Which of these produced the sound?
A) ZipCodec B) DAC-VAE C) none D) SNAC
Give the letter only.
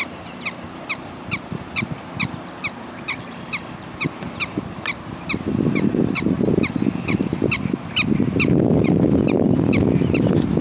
C